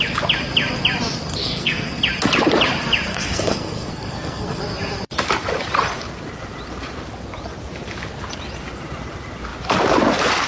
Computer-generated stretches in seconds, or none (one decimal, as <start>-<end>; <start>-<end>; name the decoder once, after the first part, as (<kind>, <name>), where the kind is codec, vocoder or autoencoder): 1.4-2.0 (codec, SNAC); 3.1-4.6

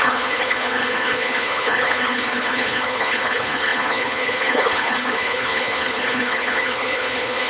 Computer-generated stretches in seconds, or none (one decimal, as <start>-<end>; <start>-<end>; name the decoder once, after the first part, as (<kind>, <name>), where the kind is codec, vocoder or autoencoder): 0.0-7.5 (codec, HILCodec)

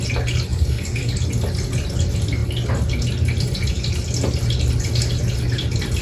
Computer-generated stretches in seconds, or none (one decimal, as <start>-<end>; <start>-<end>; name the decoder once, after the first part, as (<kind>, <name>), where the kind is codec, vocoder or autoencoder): 0.5-1.1 (codec, DAC)

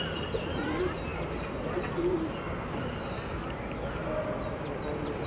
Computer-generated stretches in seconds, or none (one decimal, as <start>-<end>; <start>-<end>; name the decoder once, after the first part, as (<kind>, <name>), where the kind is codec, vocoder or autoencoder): none

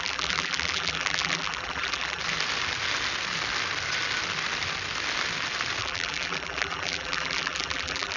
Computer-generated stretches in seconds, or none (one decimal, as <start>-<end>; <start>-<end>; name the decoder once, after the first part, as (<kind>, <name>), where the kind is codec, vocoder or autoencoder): 0.0-2.2 (vocoder, BigVGAN v2); 5.8-8.2